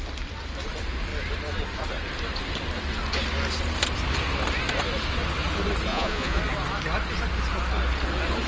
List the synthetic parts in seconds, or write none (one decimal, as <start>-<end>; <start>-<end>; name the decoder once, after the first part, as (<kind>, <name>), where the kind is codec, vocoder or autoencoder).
5.9-6.4 (vocoder, Vocos)